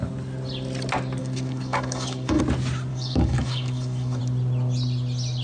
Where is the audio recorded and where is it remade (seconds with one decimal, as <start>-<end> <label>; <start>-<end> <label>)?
0.0-1.2 recorded; 1.2-2.4 remade; 2.4-2.9 recorded; 2.9-4.2 remade; 4.2-5.4 recorded

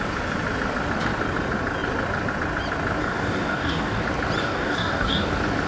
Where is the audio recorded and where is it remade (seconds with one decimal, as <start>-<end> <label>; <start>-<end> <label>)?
0.0-3.0 recorded; 3.0-4.0 remade; 4.0-4.4 recorded; 4.4-5.3 remade; 5.3-5.7 recorded